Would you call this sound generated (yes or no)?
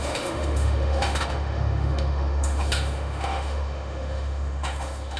yes